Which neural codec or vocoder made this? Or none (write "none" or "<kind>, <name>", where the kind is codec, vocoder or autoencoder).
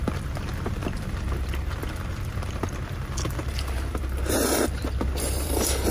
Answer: vocoder, BigVGAN v2